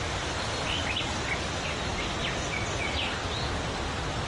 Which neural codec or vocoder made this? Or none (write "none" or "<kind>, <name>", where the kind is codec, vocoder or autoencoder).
none